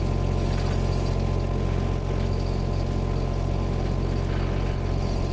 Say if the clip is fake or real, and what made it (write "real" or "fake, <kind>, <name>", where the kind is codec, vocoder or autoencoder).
real